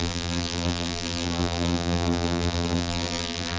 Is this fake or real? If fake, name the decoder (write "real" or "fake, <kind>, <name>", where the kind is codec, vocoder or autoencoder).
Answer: fake, vocoder, BigVGAN v2